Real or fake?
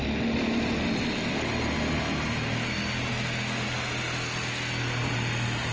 real